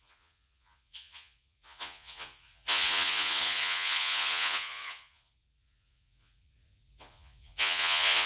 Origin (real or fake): fake